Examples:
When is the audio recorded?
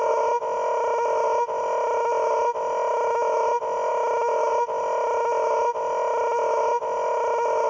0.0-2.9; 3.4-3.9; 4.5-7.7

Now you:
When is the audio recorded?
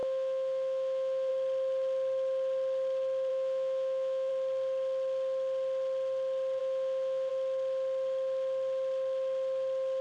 1.3-3.3; 4.3-6.6; 7.3-10.0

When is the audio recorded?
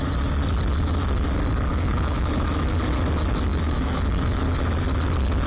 0.0-1.7; 2.7-3.5; 4.4-5.5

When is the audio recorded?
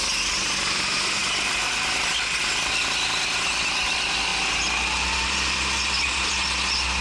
0.0-7.0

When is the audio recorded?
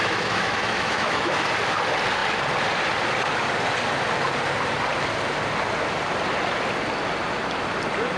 1.5-8.2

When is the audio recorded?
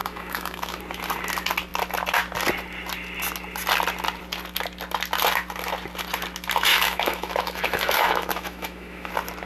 0.8-6.7; 9.1-9.5